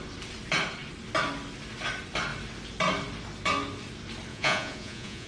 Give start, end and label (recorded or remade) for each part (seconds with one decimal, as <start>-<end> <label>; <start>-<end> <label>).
0.0-4.3 recorded; 4.3-5.3 remade